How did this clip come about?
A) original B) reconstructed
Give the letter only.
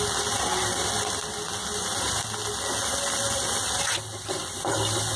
A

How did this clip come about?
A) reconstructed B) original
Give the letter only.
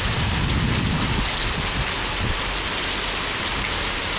B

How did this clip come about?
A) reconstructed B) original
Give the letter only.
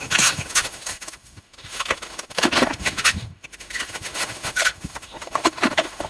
A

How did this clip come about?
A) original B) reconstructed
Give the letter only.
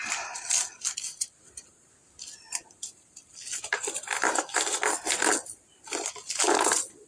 A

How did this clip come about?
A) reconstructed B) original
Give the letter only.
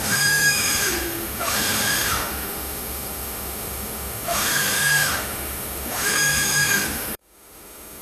A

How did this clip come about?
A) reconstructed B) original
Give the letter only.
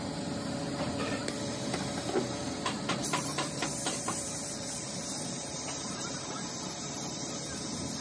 A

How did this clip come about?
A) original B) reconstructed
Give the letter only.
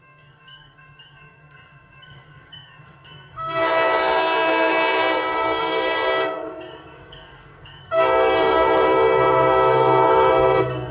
B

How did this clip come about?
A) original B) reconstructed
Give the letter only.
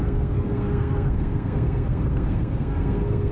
B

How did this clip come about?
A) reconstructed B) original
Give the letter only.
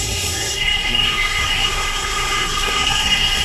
A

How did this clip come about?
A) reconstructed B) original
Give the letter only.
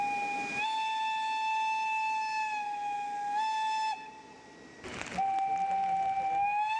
B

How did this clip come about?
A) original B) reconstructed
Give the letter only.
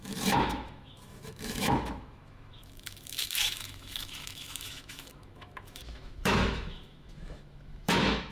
B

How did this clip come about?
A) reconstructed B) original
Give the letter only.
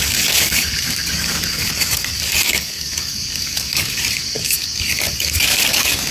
A